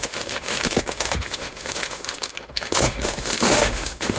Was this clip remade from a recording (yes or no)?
yes